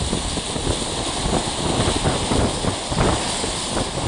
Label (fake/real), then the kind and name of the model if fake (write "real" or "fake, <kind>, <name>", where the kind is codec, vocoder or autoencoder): real